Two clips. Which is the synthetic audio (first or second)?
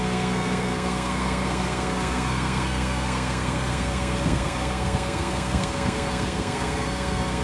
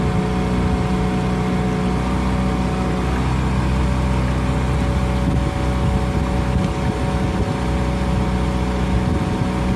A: first